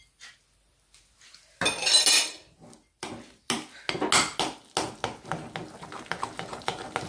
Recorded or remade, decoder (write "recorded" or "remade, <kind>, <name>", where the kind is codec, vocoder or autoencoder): recorded